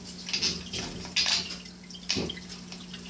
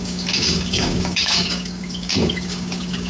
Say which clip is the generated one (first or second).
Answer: second